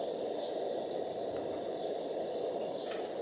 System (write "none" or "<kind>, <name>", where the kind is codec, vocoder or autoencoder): none